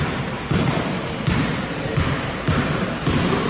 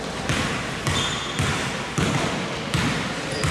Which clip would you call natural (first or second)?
second